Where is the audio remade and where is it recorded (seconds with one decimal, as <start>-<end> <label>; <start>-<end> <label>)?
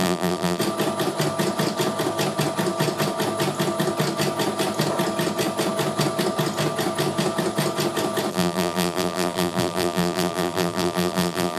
0.0-0.6 remade; 0.6-8.3 recorded; 8.3-11.6 remade